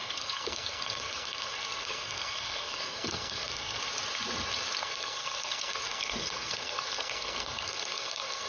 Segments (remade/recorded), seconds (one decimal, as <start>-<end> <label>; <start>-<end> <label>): 0.0-3.8 remade; 3.8-4.8 recorded; 4.8-8.5 remade